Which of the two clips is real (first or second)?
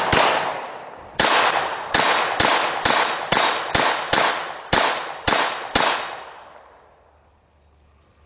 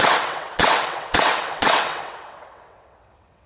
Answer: first